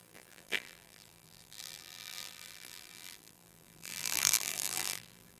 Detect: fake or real fake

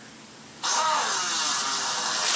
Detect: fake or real real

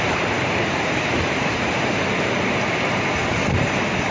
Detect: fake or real fake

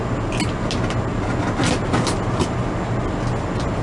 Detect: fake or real real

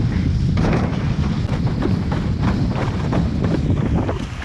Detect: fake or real real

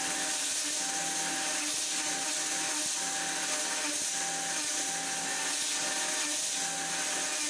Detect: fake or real real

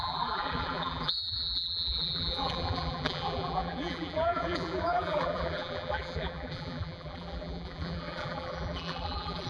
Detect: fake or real fake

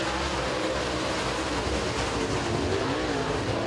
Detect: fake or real real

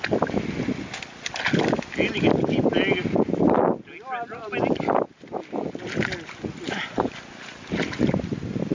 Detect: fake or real real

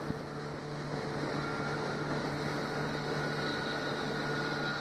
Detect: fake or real real